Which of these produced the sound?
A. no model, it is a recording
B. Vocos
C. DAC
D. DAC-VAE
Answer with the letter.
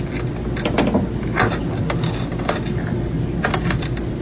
A